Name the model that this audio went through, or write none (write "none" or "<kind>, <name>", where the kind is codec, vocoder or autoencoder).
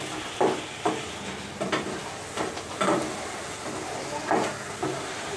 none